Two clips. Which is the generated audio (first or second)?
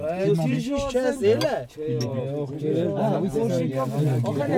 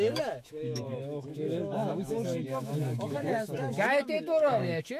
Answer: second